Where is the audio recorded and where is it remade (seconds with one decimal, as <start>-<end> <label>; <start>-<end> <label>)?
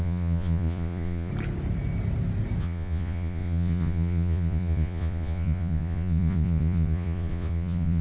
0.0-1.3 remade; 1.3-2.6 recorded; 2.6-8.0 remade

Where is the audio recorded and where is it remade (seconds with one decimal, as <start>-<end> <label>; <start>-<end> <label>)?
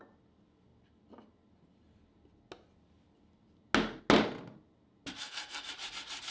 0.0-5.2 recorded; 5.2-5.7 remade; 5.7-6.3 recorded